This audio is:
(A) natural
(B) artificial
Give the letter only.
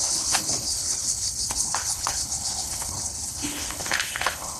B